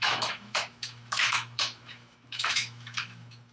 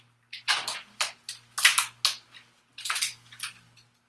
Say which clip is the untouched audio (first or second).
second